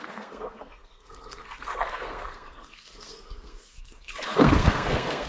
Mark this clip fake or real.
fake